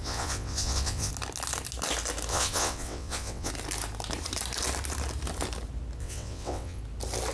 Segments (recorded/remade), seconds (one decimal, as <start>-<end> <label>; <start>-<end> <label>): 0.0-1.1 remade; 1.1-2.3 recorded; 2.3-3.5 remade; 3.5-6.0 recorded; 6.0-6.8 remade; 6.8-7.3 recorded